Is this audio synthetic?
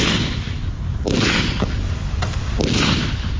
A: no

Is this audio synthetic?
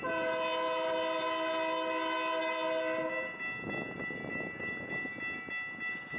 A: no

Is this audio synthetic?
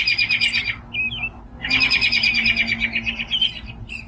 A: no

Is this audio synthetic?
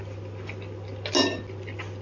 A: no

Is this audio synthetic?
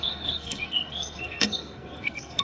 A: yes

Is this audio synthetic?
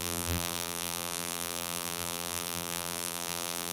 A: yes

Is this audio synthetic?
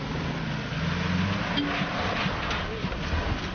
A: no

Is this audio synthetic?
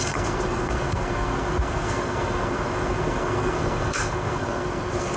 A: yes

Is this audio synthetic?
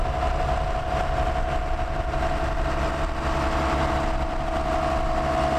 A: no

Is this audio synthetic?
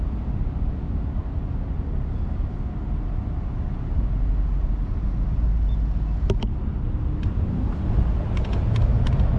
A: no